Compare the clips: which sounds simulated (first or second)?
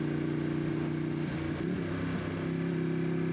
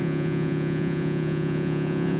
second